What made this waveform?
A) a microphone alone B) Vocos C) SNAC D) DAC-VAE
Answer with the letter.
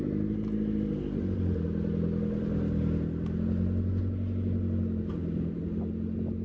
A